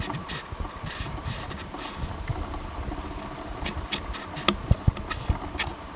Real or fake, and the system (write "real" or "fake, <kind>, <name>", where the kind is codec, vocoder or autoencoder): real